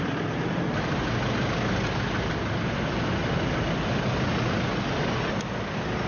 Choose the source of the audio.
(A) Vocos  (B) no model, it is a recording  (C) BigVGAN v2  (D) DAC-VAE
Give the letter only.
B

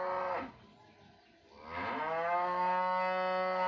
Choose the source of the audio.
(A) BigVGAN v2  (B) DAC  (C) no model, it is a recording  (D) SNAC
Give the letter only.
C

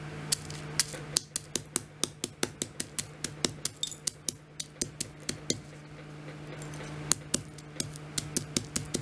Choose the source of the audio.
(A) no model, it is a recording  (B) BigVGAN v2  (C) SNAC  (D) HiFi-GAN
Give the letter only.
A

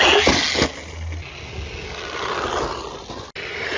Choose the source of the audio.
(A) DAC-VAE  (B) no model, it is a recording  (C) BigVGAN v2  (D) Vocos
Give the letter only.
B